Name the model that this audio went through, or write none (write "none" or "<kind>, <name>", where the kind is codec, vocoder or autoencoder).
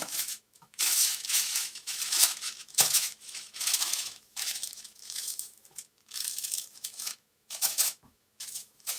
autoencoder, DAC-VAE